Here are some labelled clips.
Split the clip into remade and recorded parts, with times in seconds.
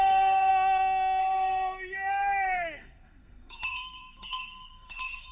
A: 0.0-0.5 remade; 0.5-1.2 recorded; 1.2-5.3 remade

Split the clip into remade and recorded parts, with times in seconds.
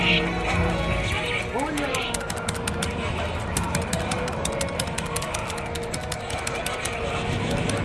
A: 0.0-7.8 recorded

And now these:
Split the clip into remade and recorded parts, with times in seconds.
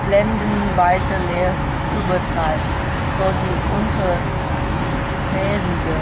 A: 0.0-0.6 recorded; 0.6-2.0 remade; 2.0-3.4 recorded; 3.4-4.9 remade; 4.9-6.0 recorded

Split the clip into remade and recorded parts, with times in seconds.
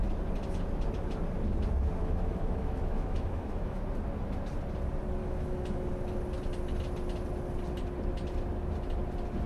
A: 0.0-2.0 recorded; 2.0-3.8 remade; 3.8-5.2 recorded; 5.2-5.9 remade; 5.9-9.5 recorded